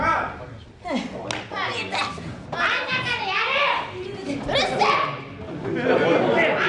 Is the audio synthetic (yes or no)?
no